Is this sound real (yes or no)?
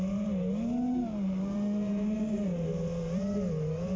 yes